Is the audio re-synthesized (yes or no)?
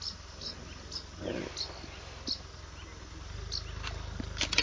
no